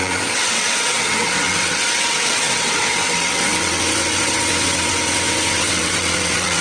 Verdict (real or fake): fake